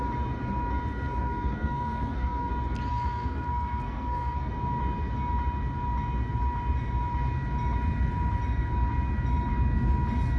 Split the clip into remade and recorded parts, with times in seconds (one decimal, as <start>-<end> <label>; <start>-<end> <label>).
0.0-1.2 recorded; 1.2-2.5 remade; 2.5-2.9 recorded; 2.9-4.5 remade; 4.5-10.4 recorded